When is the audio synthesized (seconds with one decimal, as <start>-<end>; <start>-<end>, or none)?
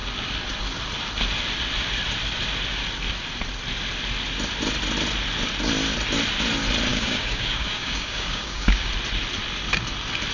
6.9-8.9